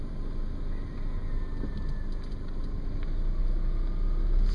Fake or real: real